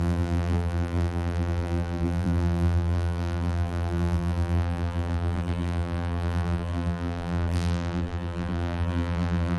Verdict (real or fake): fake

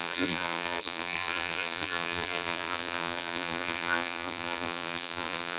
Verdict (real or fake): fake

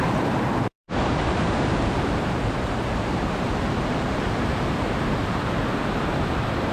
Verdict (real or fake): fake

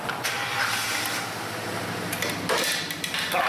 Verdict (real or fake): real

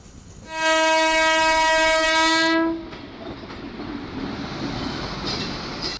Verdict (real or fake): real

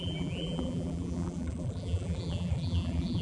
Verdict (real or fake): fake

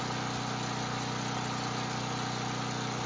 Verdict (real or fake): real